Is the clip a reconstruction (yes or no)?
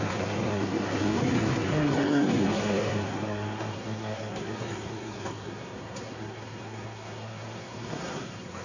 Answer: yes